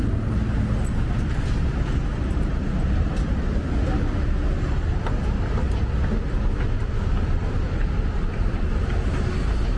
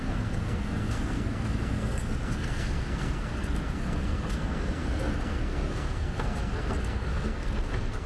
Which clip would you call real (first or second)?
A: first